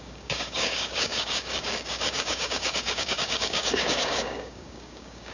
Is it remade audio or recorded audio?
remade